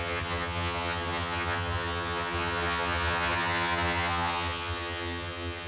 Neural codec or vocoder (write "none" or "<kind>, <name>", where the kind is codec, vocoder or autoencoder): vocoder, HiFi-GAN